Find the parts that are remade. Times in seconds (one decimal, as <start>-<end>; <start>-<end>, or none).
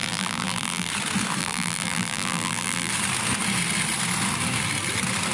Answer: 0.0-0.9; 1.4-2.9